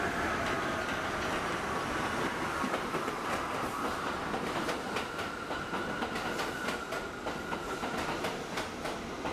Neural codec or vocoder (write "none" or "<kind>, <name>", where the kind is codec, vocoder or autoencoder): none